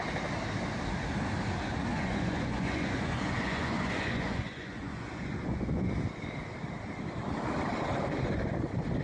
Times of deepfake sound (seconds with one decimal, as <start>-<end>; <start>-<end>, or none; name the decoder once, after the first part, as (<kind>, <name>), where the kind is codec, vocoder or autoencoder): 1.9-5.9 (vocoder, Vocos)